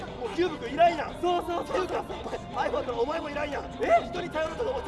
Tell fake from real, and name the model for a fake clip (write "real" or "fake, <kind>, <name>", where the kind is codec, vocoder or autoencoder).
real